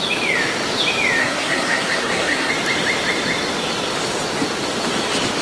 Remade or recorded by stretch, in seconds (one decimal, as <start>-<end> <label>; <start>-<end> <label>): 0.0-1.2 recorded; 1.2-2.5 remade; 2.5-5.4 recorded